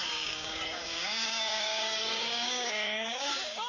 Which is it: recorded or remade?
remade